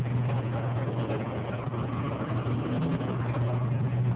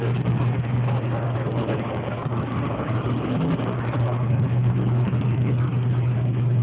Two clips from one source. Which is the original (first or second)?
first